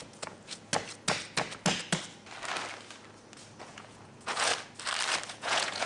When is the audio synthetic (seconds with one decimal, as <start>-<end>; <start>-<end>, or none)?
0.0-0.7; 3.6-4.5; 5.3-5.9